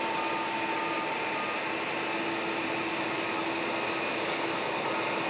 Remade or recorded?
recorded